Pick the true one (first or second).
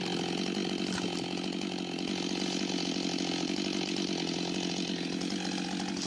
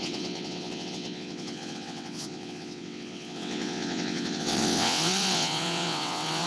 first